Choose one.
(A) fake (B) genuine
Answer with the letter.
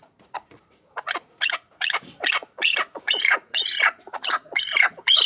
A